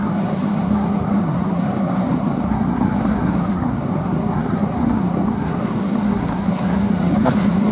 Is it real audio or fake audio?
fake